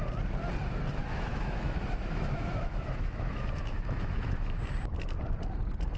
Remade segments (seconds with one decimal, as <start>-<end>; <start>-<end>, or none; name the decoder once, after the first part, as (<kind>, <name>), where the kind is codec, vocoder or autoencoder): 1.0-4.6 (autoencoder, DAC-VAE)